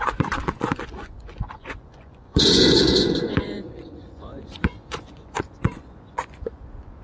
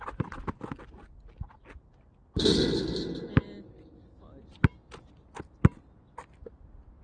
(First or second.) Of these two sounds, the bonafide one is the second